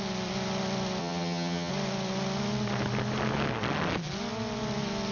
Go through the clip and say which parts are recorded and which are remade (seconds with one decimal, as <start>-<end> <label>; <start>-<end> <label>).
0.0-1.0 recorded; 1.0-1.7 remade; 1.7-5.1 recorded